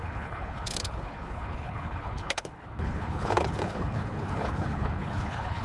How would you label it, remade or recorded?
remade